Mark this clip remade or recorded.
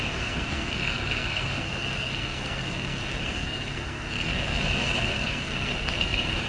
remade